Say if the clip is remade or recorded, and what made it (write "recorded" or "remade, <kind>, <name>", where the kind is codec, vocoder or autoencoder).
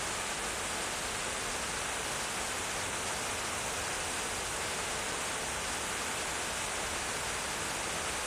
recorded